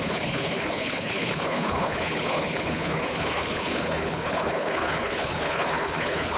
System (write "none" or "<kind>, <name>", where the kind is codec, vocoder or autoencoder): codec, HILCodec